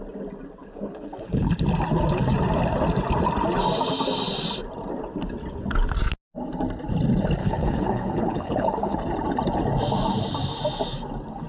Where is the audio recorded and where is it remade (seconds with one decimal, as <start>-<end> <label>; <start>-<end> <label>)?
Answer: 0.0-0.6 recorded; 0.6-1.5 remade; 1.5-7.4 recorded; 7.4-9.0 remade; 9.0-11.5 recorded